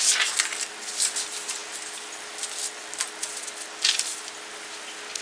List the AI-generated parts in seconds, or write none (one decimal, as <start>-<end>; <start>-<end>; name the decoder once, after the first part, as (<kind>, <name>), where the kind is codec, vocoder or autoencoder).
none